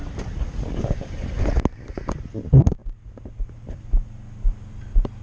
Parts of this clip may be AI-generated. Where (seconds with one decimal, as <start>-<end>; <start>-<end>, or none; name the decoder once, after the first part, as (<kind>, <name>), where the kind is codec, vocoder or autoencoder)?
none